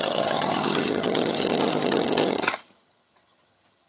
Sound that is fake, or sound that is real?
fake